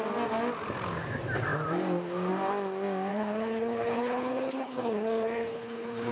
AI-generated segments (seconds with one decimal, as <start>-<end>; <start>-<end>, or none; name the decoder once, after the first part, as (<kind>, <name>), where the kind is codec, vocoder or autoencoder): 3.1-6.1 (codec, HILCodec)